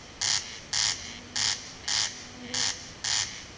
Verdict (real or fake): real